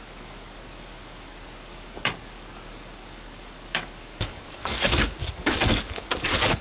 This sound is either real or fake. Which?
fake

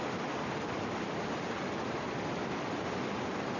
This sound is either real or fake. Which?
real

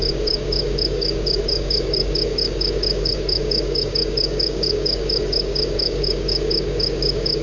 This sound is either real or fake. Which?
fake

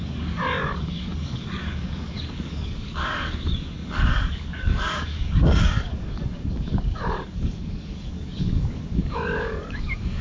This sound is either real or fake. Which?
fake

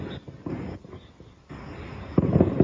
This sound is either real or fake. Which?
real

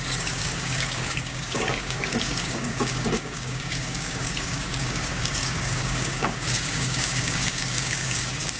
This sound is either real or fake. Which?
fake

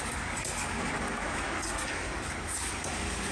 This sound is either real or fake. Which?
fake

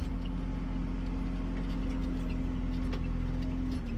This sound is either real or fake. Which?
real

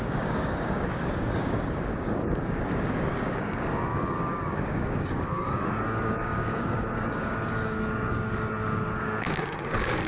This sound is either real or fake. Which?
fake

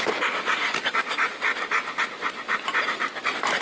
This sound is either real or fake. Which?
real